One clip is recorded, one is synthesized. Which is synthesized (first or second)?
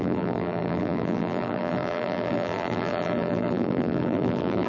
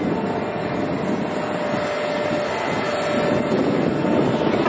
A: first